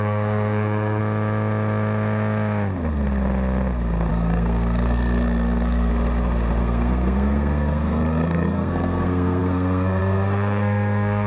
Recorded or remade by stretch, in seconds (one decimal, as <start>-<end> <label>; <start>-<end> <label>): 0.0-1.0 remade; 1.0-4.1 recorded; 4.1-5.9 remade; 5.9-6.6 recorded; 6.6-11.3 remade